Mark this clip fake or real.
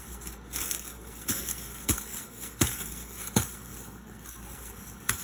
fake